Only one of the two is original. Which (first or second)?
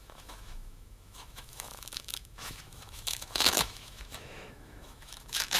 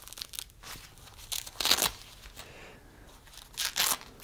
second